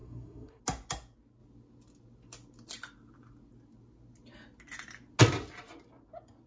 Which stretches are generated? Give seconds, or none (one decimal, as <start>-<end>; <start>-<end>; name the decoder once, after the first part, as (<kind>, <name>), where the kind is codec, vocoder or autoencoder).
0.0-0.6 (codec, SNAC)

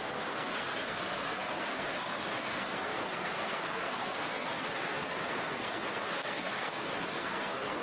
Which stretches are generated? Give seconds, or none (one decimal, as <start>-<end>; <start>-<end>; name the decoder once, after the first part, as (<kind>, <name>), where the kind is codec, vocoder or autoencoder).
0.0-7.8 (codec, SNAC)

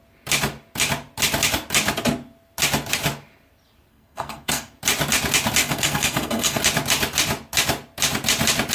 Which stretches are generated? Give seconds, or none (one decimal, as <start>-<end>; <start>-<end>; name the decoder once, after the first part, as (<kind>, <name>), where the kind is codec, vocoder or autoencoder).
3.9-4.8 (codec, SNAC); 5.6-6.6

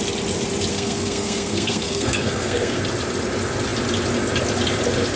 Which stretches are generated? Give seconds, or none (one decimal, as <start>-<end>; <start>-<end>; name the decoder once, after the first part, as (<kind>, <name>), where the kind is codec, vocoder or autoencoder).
0.7-2.8 (codec, SNAC)

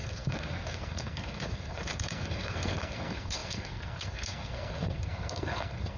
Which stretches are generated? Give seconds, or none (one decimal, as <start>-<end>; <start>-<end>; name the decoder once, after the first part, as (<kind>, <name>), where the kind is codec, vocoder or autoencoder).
0.0-6.0 (codec, SNAC)

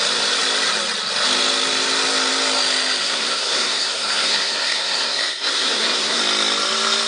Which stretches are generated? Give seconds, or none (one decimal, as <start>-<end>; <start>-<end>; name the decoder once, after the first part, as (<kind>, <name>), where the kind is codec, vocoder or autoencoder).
3.0-6.2 (codec, SNAC)

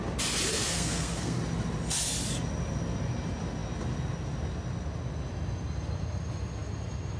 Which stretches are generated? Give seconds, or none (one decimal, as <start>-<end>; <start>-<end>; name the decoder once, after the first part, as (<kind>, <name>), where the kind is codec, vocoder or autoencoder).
0.5-1.4 (codec, SNAC)

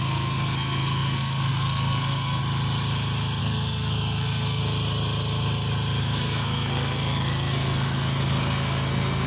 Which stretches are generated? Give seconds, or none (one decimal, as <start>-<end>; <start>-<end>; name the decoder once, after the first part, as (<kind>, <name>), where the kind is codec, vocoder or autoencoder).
0.0-2.4 (codec, SNAC); 3.4-4.6; 6.0-9.3